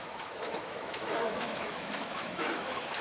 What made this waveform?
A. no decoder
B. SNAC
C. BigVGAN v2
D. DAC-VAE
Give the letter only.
D